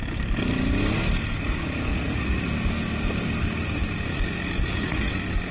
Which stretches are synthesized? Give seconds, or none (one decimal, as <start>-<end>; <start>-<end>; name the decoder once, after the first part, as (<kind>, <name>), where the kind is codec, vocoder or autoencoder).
1.9-2.5 (vocoder, Vocos); 4.6-5.1